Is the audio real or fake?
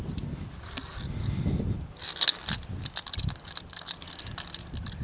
real